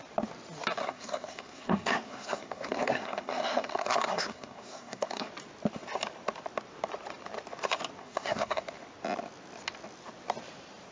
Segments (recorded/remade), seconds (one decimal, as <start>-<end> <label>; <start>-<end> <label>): 0.0-0.8 recorded; 0.8-5.3 remade; 5.3-8.0 recorded; 8.0-8.6 remade; 8.6-10.9 recorded